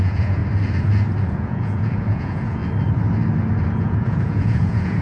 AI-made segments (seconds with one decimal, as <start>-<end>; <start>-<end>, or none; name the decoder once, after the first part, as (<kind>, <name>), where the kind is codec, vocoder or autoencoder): 0.0-0.4 (vocoder, Vocos); 1.2-2.6; 3.8-5.0